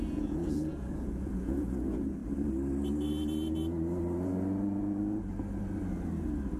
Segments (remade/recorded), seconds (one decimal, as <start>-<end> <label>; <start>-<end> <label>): 0.0-2.2 remade; 2.2-6.6 recorded